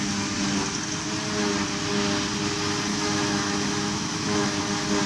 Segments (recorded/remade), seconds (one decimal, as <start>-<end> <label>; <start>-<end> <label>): 0.0-2.9 recorded; 2.9-4.6 remade; 4.6-5.1 recorded